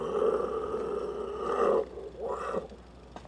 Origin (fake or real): real